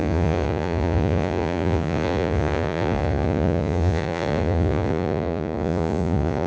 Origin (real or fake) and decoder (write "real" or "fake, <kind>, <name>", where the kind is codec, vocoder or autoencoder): fake, vocoder, Vocos